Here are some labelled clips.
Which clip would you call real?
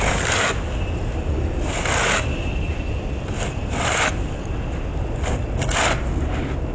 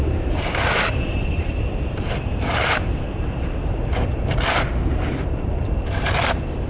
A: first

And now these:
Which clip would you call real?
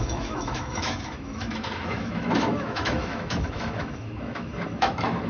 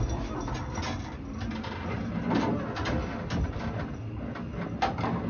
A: second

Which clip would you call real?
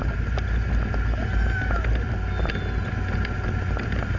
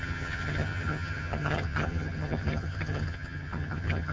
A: first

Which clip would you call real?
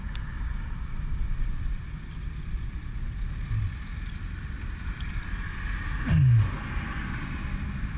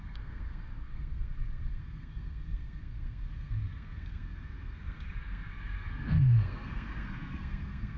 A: first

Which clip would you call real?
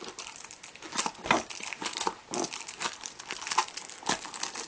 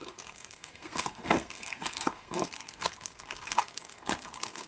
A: first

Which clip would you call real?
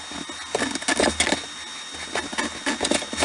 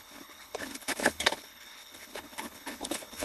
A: first